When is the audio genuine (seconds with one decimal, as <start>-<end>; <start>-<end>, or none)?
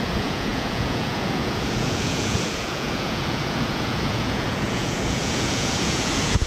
none